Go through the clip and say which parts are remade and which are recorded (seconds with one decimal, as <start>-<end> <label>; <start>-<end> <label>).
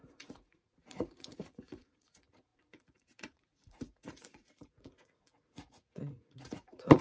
0.0-7.0 remade